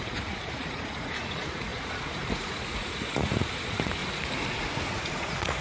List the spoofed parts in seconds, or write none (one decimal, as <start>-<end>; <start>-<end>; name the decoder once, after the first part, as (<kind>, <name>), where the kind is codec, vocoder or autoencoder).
0.0-4.0 (vocoder, Vocos); 4.5-5.6